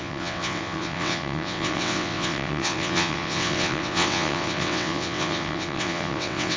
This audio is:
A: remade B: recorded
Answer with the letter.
A